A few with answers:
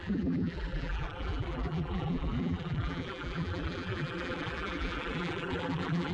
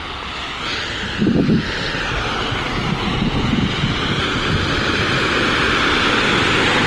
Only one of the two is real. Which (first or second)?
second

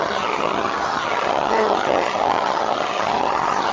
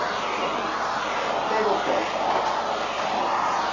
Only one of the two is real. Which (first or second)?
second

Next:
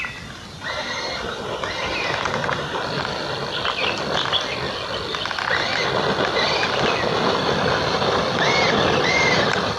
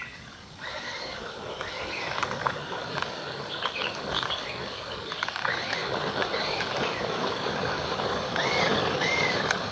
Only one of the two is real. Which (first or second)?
first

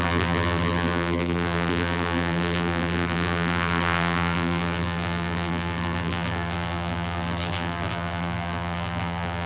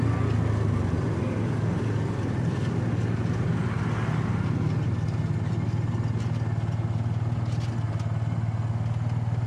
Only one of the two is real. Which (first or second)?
second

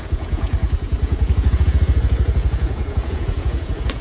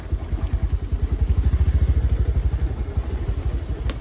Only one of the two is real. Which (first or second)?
second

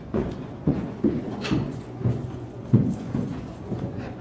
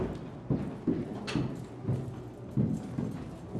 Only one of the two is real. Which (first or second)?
second